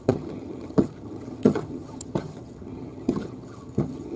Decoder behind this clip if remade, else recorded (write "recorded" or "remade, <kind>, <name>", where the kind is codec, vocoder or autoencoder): remade, vocoder, HiFi-GAN